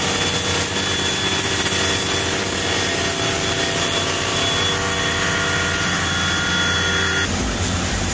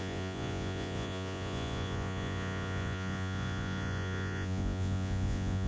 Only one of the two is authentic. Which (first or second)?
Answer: first